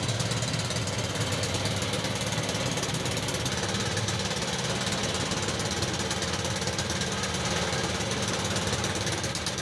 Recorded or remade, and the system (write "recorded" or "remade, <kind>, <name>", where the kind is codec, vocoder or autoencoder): recorded